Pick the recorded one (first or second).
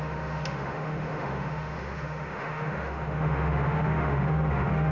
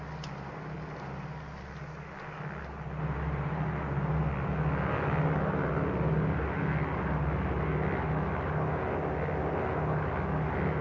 second